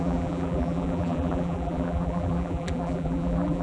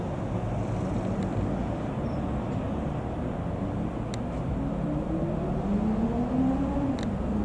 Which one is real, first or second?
second